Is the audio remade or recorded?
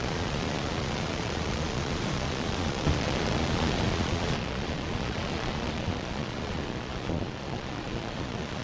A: remade